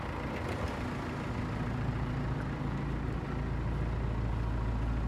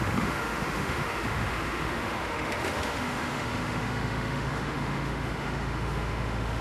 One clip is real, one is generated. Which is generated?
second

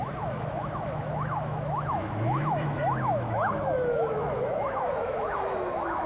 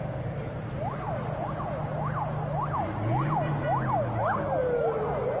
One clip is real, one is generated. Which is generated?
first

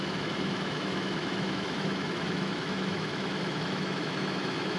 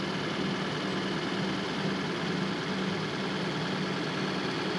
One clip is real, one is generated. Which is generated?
first